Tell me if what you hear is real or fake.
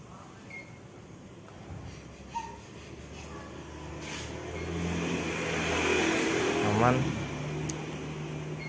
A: real